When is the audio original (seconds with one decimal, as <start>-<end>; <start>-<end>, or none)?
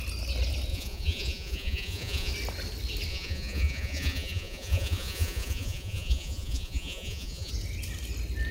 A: 0.0-0.7; 2.3-3.1; 7.5-8.5